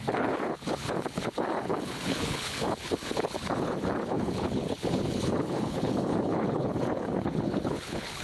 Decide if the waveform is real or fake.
fake